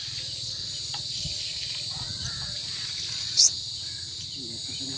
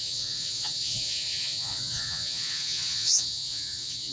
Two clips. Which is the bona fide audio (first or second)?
first